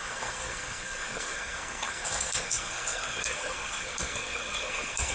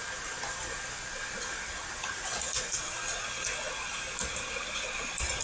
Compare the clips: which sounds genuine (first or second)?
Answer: second